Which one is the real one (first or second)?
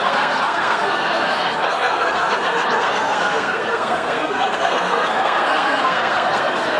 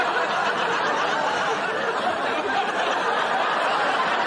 second